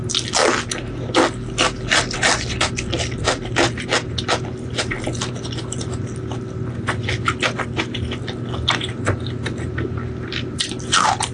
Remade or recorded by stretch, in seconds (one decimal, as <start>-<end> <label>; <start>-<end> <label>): 0.0-11.3 recorded